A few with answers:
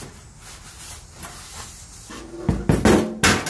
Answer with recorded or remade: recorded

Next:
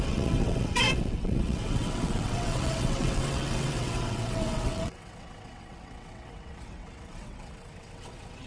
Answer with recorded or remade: remade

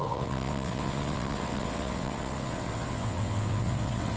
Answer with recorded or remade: remade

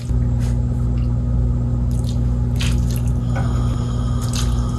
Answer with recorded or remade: recorded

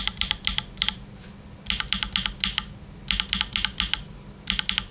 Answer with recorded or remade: recorded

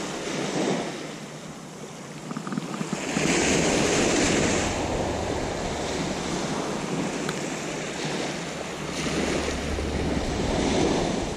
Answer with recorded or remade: recorded